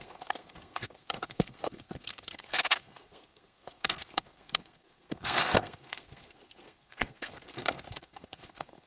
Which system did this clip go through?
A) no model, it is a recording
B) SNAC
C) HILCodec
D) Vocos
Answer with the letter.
B